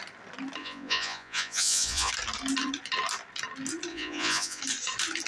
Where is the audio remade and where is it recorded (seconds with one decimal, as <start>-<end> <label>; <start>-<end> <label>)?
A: 0.0-0.6 recorded; 0.6-2.1 remade; 2.1-3.9 recorded; 3.9-4.6 remade; 4.6-5.3 recorded